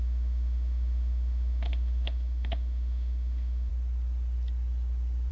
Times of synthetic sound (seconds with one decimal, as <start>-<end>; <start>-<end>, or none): 0.0-3.7